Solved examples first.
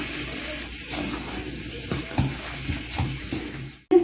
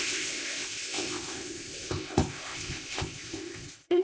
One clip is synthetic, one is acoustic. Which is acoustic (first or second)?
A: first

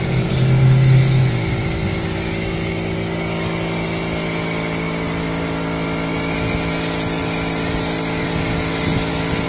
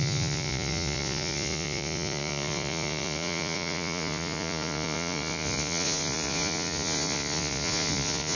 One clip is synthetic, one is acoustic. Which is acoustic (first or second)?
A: first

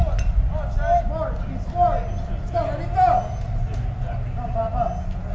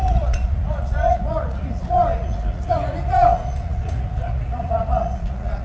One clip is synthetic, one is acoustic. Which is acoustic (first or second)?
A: first